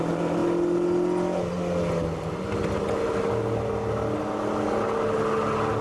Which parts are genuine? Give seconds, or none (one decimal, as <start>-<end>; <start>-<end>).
0.0-5.8